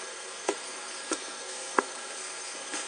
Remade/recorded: remade